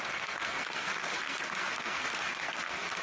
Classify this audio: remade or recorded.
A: remade